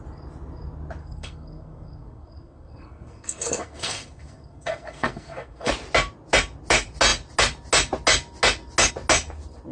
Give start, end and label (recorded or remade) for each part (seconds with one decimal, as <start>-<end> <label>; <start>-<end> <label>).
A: 0.0-1.0 recorded; 1.0-5.7 remade; 5.7-9.7 recorded

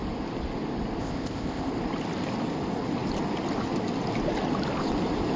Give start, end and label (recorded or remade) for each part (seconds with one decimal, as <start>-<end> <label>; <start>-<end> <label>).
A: 0.0-1.0 recorded; 1.0-1.7 remade; 1.7-5.4 recorded

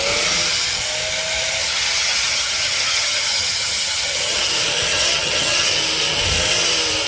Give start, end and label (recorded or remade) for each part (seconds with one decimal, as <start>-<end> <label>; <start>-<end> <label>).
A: 0.0-1.6 recorded; 1.6-4.5 remade; 4.5-4.9 recorded; 4.9-5.8 remade; 5.8-7.1 recorded

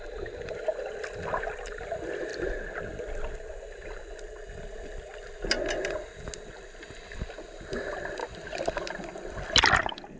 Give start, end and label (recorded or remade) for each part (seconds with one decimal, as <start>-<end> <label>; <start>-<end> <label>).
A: 0.0-10.2 recorded

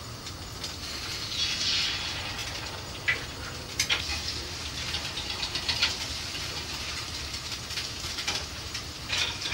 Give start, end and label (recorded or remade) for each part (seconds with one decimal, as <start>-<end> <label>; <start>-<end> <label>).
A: 0.0-4.1 recorded; 4.1-9.5 remade

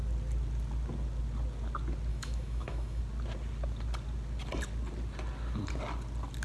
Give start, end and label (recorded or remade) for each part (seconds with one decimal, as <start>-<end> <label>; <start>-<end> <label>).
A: 0.0-2.1 recorded; 2.1-3.0 remade; 3.0-6.4 recorded

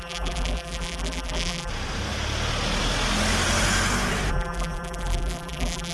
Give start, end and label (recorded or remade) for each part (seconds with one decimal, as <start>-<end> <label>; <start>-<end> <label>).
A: 0.0-1.7 remade; 1.7-4.3 recorded; 4.3-5.9 remade

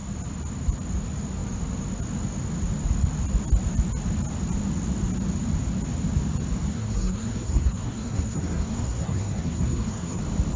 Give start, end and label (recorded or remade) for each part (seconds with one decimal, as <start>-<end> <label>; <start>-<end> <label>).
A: 0.0-6.7 recorded; 6.7-10.2 remade; 10.2-10.6 recorded